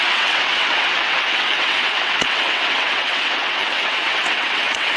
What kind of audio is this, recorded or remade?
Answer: remade